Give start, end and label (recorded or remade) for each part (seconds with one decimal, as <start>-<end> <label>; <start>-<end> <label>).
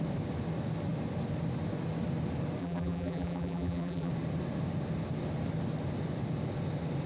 0.0-2.6 recorded; 2.6-4.1 remade; 4.1-7.1 recorded